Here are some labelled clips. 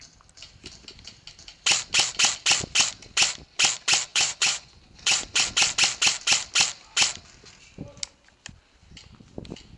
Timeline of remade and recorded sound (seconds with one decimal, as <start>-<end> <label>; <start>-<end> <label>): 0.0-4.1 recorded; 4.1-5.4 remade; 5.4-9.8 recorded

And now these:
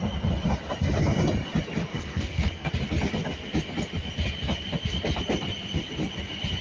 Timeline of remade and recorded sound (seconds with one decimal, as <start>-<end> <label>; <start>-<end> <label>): 0.0-1.9 recorded; 1.9-2.7 remade; 2.7-6.6 recorded

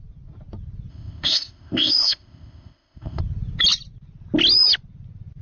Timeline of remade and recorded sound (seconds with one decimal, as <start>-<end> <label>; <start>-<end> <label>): 0.0-0.9 recorded; 0.9-3.2 remade; 3.2-5.4 recorded

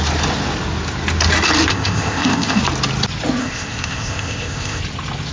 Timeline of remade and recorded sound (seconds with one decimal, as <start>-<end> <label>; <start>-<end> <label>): 0.0-1.7 recorded; 1.7-2.6 remade; 2.6-3.4 recorded; 3.4-4.8 remade; 4.8-5.3 recorded

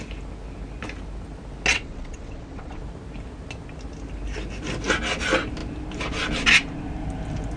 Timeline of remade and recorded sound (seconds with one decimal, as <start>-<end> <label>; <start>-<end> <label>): 0.0-1.7 recorded; 1.7-2.8 remade; 2.8-7.6 recorded

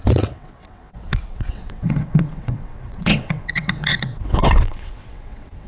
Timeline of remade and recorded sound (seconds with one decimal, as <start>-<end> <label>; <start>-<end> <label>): 0.0-5.7 remade

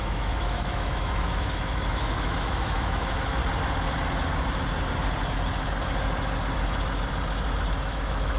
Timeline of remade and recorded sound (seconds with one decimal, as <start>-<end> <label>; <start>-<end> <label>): 0.0-3.4 remade; 3.4-7.8 recorded; 7.8-8.4 remade

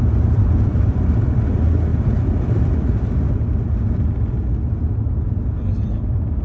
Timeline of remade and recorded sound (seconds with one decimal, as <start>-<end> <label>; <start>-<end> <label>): 0.0-6.4 recorded